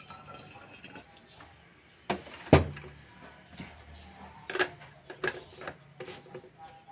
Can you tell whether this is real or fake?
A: real